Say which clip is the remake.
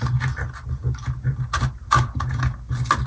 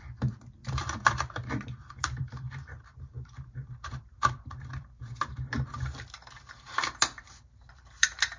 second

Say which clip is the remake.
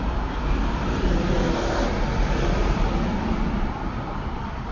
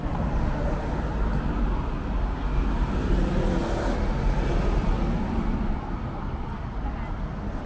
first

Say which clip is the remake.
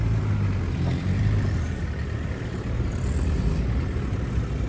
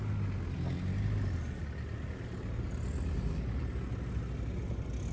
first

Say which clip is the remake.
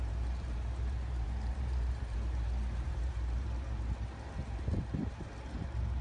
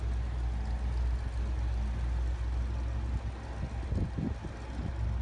first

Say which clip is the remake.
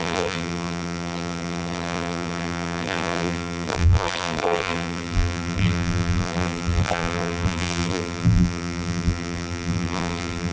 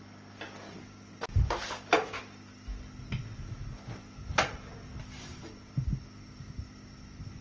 first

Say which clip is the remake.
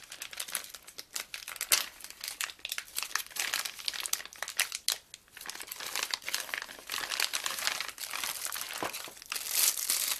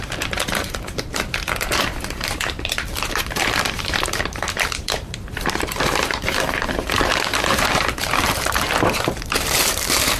second